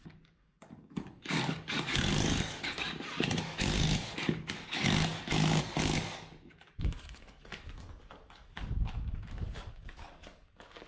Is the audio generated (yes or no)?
yes